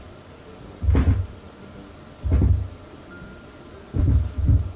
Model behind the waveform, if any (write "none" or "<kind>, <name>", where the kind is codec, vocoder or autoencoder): none